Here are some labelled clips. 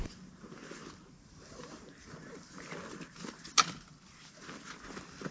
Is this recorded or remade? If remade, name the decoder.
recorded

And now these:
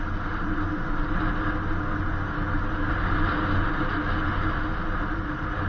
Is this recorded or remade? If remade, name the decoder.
recorded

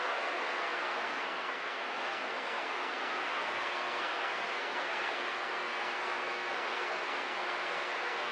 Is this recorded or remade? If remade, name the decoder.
remade, codec, SNAC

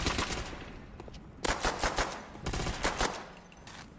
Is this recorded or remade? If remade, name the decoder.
recorded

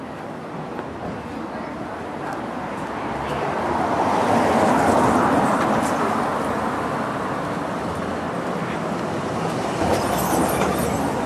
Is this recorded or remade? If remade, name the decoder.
recorded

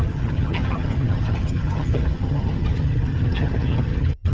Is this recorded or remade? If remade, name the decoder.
remade, vocoder, HiFi-GAN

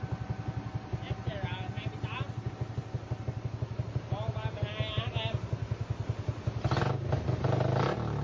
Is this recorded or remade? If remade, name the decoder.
recorded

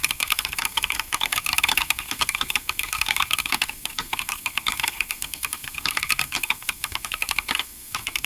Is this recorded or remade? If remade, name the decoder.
remade, codec, SNAC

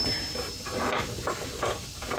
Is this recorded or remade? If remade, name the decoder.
recorded